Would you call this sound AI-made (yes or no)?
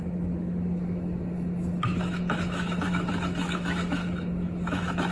yes